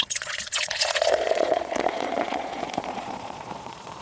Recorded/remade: remade